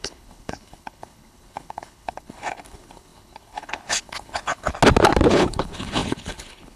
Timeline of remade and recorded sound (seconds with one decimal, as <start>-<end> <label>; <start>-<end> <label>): 0.0-4.7 remade; 4.7-5.3 recorded; 5.3-6.8 remade